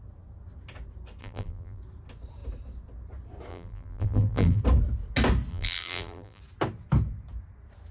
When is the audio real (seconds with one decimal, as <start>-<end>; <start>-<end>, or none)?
0.0-1.2; 1.8-3.5; 4.6-5.5; 6.4-7.9